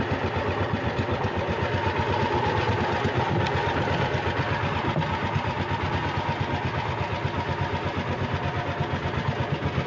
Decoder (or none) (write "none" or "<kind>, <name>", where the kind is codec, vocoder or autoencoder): none